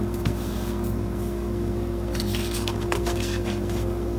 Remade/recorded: remade